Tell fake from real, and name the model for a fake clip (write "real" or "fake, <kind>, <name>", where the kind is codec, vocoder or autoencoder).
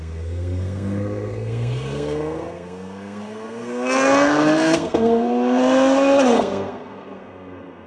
fake, codec, SNAC